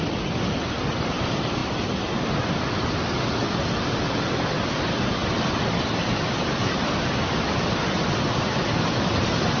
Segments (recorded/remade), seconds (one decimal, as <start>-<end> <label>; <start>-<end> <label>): 0.0-9.6 recorded